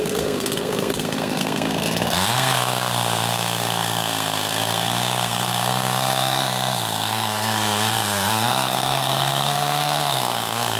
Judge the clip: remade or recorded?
remade